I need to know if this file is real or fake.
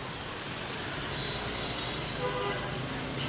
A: real